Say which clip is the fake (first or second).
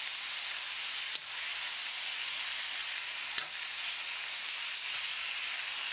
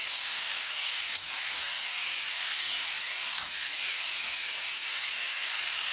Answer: second